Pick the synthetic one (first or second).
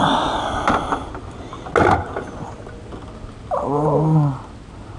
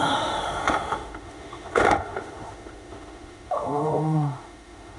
second